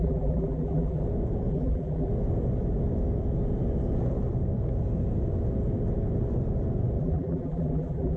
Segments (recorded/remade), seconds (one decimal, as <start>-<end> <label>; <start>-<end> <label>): 0.0-1.0 remade; 1.0-1.5 recorded; 1.5-2.1 remade; 2.1-7.0 recorded; 7.0-8.2 remade